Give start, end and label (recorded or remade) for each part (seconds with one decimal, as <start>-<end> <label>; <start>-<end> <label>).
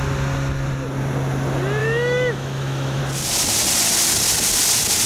0.0-1.8 recorded; 1.8-3.0 remade; 3.0-5.1 recorded